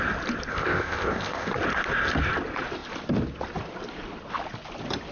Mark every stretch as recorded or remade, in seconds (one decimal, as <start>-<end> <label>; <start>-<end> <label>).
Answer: 0.0-0.5 recorded; 0.5-1.5 remade; 1.5-5.1 recorded

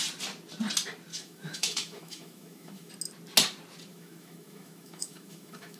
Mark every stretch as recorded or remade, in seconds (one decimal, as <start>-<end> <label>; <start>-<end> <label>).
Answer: 0.0-1.1 recorded; 1.1-2.9 remade; 2.9-3.9 recorded; 3.9-5.8 remade

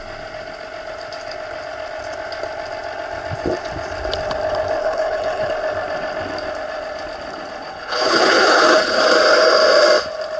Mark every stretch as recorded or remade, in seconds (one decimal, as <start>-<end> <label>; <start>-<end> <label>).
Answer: 0.0-4.8 recorded; 4.8-5.5 remade; 5.5-7.7 recorded; 7.7-9.0 remade; 9.0-10.4 recorded

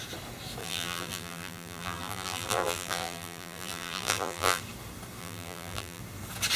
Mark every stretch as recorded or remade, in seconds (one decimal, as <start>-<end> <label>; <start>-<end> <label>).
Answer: 0.0-0.6 recorded; 0.6-4.6 remade; 4.6-5.2 recorded; 5.2-6.0 remade; 6.0-6.6 recorded

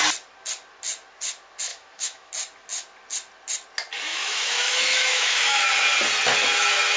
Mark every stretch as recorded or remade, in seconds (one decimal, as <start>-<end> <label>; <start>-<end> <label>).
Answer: 0.0-1.7 recorded; 1.7-2.3 remade; 2.3-4.1 recorded; 4.1-5.7 remade; 5.7-7.0 recorded

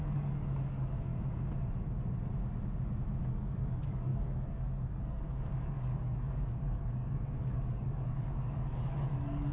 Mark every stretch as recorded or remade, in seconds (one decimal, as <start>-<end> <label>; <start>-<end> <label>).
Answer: 0.0-1.1 remade; 1.1-3.3 recorded; 3.3-9.5 remade